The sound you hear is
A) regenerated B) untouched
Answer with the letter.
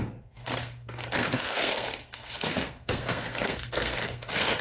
A